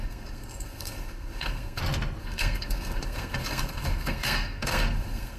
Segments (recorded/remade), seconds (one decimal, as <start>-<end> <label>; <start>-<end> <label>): 0.0-1.8 remade; 1.8-2.2 recorded; 2.2-5.4 remade